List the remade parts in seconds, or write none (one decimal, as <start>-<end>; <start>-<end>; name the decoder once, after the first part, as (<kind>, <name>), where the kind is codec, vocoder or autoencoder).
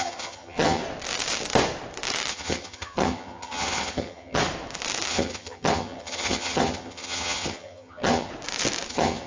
0.0-0.8 (vocoder, HiFi-GAN); 2.3-4.4; 5.1-8.3; 8.9-9.3